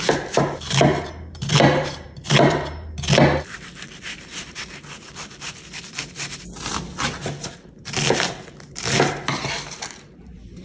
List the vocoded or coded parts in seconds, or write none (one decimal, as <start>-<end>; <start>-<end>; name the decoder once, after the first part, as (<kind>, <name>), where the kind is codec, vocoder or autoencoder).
0.9-2.9 (vocoder, BigVGAN v2)